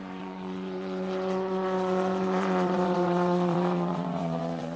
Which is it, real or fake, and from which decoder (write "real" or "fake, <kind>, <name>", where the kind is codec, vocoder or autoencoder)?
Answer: fake, vocoder, Vocos